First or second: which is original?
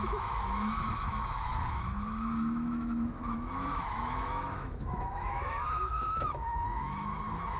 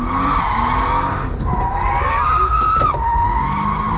second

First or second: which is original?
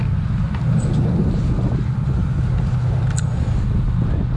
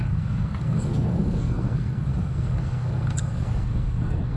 first